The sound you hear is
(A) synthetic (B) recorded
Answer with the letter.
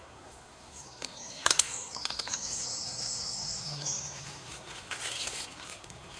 A